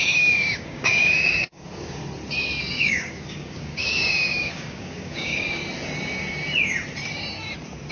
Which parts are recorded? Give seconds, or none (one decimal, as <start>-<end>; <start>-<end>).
2.0-2.6; 5.6-7.9